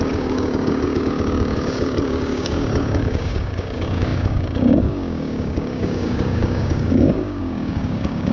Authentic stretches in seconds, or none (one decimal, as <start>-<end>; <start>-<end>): none